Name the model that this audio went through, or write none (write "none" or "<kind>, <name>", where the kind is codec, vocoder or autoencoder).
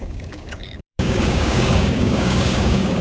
codec, DAC